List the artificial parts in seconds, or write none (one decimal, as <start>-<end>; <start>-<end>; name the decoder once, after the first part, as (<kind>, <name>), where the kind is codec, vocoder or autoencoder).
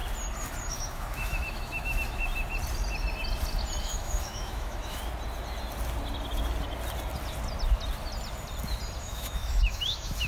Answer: 0.7-2.2 (autoencoder, DAC-VAE); 3.8-5.0; 9.0-10.3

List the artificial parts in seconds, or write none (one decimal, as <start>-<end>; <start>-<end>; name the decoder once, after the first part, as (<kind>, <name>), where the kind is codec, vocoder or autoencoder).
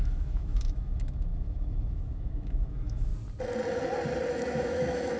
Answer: 0.0-3.1 (autoencoder, DAC-VAE); 4.3-5.2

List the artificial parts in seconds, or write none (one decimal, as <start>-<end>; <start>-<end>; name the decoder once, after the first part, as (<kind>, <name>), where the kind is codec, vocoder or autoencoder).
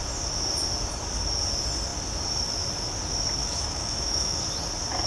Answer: 3.4-4.4 (autoencoder, DAC-VAE)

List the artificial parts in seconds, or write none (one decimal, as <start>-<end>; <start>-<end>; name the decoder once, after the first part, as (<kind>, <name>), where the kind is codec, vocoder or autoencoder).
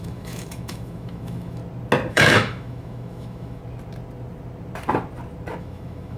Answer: 0.0-1.6 (autoencoder, DAC-VAE); 2.1-3.6; 5.6-6.2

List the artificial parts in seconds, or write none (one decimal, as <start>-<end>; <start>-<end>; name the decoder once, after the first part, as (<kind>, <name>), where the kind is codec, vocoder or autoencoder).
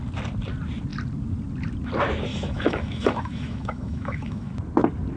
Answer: 2.3-4.5 (autoencoder, DAC-VAE)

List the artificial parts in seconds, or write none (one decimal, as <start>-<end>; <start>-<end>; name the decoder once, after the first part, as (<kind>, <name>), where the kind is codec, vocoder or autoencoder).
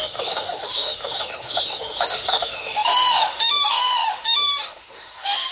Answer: 0.0-5.5 (autoencoder, DAC-VAE)